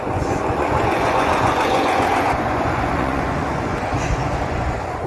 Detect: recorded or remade remade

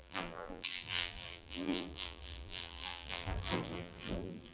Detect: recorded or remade remade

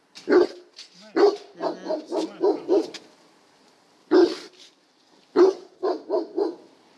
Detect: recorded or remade recorded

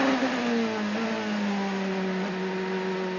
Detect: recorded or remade recorded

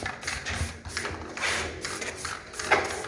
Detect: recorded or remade recorded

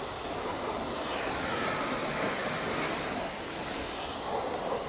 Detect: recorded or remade recorded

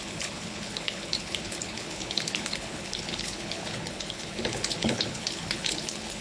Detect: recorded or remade remade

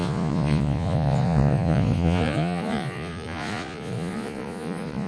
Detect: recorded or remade remade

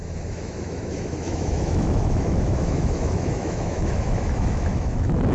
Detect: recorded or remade remade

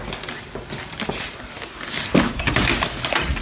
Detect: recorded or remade recorded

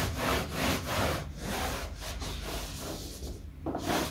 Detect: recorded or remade recorded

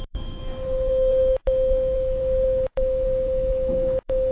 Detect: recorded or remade remade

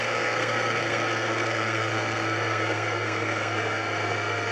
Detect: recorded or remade remade